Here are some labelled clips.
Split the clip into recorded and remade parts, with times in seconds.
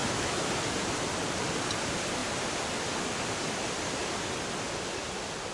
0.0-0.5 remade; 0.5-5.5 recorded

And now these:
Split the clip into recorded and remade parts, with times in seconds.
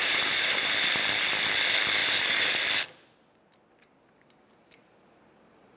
0.0-1.1 remade; 1.1-2.0 recorded; 2.0-2.6 remade; 2.6-5.8 recorded